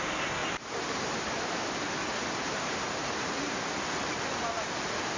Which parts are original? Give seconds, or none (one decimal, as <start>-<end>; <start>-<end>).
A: 0.0-0.4; 3.1-5.2

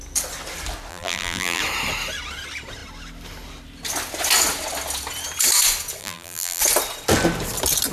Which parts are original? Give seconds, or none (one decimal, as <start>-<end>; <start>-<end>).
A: 0.0-0.9; 1.6-6.0; 6.6-7.9

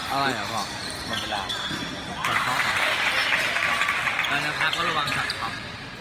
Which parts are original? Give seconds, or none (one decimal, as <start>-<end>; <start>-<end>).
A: 0.0-1.5; 3.2-6.0

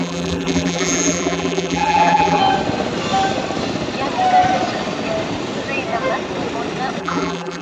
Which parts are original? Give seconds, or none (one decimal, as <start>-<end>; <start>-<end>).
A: 2.4-7.0